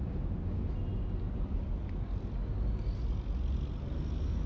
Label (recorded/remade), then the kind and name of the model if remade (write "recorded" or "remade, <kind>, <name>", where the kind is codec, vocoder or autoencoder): recorded